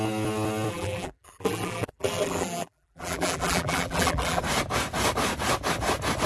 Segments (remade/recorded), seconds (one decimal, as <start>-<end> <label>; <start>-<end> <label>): 0.0-0.7 recorded; 0.7-4.4 remade; 4.4-6.3 recorded